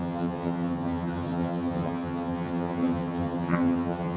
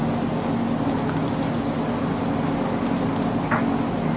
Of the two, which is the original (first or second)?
second